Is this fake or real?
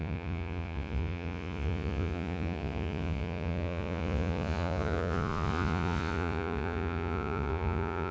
fake